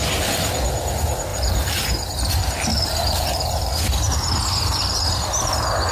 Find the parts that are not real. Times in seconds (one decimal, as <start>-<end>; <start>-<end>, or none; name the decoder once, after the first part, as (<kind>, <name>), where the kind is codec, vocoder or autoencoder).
1.3-2.3 (vocoder, BigVGAN v2); 2.7-3.7